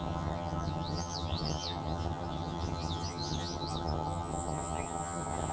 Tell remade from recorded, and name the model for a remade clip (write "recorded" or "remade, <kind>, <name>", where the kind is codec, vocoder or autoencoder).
remade, vocoder, HiFi-GAN